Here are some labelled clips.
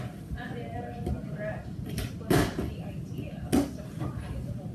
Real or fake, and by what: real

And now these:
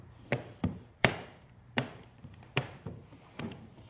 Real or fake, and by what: fake, vocoder, BigVGAN v2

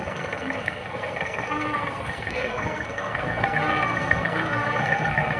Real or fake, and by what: fake, codec, SNAC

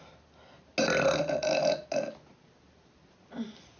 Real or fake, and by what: real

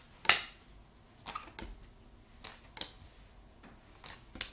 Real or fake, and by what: real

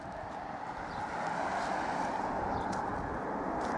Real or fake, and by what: real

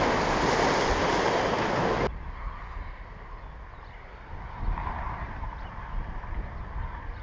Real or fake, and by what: real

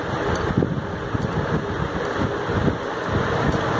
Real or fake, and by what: real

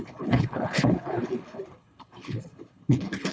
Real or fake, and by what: fake, codec, HILCodec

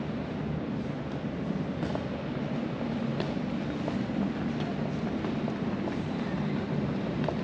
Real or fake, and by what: real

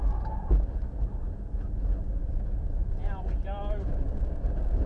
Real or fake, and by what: real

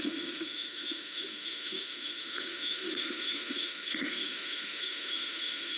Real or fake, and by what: fake, autoencoder, DAC-VAE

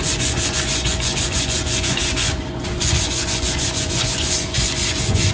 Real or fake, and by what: fake, vocoder, Vocos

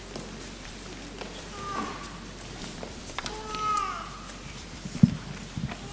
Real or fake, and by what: real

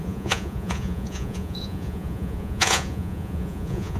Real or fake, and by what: fake, vocoder, Vocos